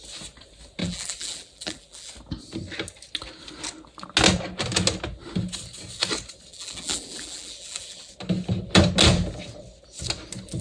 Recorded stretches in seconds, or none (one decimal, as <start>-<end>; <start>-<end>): 0.0-0.8; 2.1-6.5; 8.1-10.6